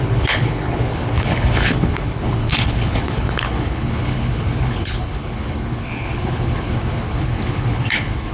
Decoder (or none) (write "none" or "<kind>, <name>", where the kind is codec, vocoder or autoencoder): codec, HILCodec